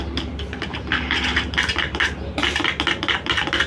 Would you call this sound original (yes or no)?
yes